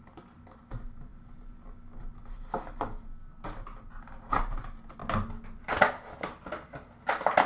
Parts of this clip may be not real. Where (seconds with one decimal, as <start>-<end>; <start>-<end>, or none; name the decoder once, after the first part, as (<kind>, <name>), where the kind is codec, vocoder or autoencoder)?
none